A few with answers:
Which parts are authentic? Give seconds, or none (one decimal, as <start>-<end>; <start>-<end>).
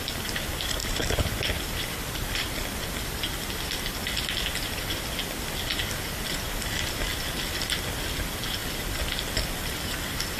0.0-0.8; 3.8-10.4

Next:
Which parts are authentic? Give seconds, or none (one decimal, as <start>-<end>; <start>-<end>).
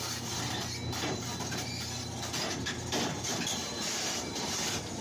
0.0-3.6; 4.6-5.0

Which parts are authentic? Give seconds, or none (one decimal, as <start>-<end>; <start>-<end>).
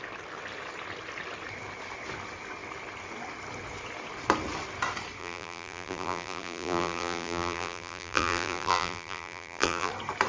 0.0-5.2; 9.9-10.3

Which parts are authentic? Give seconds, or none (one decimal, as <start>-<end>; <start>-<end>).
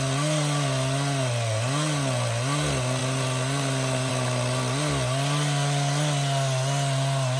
0.0-7.4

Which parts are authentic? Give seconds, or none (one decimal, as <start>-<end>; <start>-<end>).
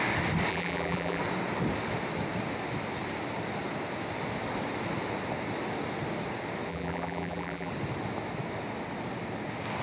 0.0-0.5; 1.2-6.7; 7.7-9.8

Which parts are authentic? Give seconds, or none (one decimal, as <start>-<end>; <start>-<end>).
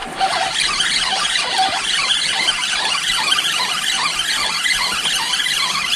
3.6-6.0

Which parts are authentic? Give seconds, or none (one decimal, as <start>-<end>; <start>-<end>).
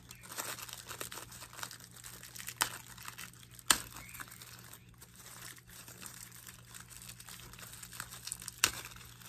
0.0-4.8; 6.7-9.3